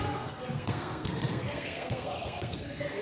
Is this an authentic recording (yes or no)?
no